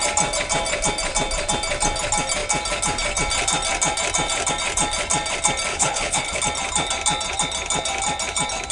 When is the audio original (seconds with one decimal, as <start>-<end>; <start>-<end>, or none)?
0.0-5.7; 6.4-8.7